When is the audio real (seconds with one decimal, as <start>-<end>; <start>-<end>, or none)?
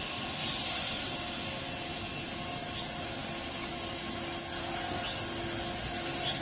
0.0-0.4; 1.2-6.4